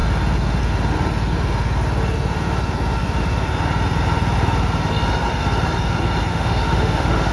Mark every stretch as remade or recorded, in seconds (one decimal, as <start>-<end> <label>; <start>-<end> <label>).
0.0-6.3 recorded; 6.3-7.3 remade